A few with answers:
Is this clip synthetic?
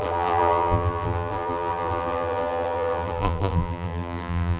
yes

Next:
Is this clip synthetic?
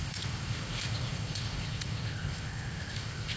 yes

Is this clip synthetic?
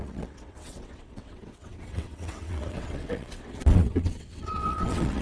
yes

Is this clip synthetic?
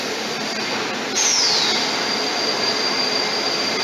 no